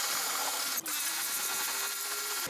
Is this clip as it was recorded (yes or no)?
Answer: yes